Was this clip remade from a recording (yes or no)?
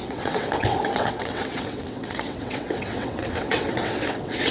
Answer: yes